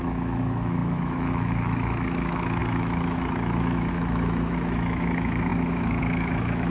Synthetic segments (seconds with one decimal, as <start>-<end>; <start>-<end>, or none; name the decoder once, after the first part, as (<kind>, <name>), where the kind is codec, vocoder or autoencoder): 0.0-6.7 (autoencoder, DAC-VAE)